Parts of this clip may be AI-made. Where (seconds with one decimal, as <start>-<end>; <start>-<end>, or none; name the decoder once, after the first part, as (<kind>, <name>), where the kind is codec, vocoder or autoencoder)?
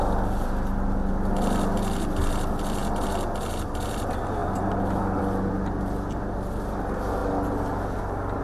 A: none